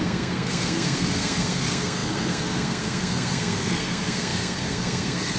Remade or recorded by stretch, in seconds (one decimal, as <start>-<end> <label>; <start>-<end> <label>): 0.0-5.4 remade